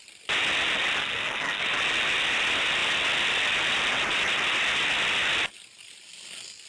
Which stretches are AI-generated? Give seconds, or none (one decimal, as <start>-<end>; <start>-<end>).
1.0-1.6